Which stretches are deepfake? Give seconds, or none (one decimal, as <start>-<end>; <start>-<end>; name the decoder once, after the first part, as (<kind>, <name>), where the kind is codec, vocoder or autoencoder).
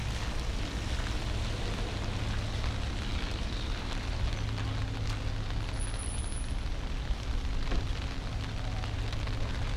none